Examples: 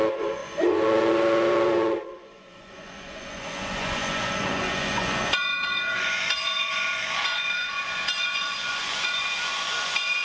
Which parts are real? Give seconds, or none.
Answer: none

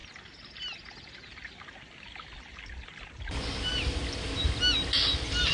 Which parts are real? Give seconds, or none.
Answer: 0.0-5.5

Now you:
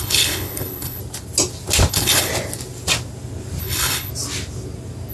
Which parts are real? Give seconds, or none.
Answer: 1.0-1.9; 2.3-3.6; 4.1-5.1